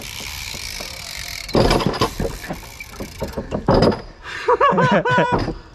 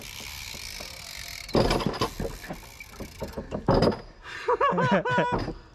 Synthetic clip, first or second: first